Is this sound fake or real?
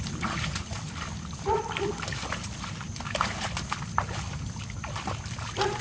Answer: real